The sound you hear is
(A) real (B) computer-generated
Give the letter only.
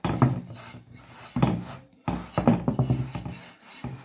A